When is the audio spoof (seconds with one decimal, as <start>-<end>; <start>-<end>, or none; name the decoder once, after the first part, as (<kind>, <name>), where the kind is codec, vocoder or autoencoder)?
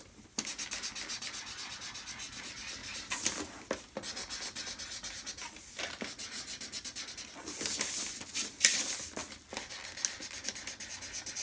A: none